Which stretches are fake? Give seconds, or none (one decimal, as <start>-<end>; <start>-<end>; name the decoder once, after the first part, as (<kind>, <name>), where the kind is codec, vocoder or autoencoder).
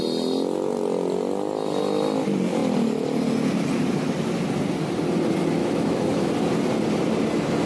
5.6-6.3 (autoencoder, DAC-VAE)